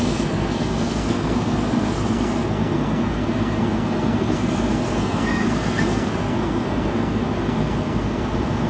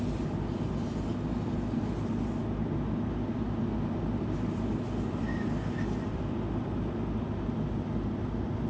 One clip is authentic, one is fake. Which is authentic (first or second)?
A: second